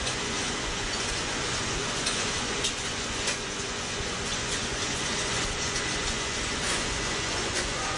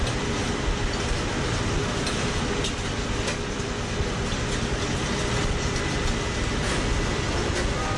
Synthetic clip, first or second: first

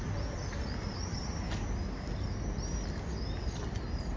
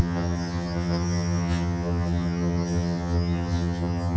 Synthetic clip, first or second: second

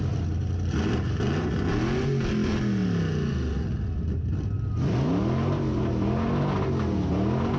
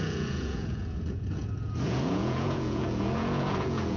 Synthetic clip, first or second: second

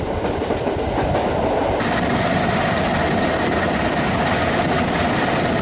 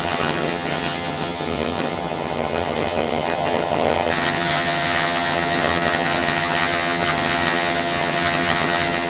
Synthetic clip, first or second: second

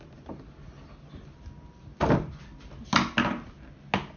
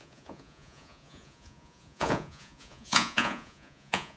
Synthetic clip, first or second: second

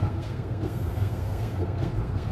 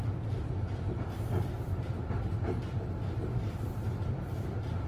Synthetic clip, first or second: first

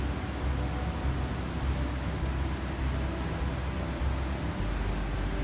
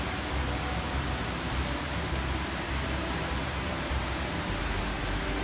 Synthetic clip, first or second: second